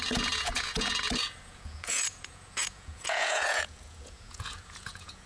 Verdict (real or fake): fake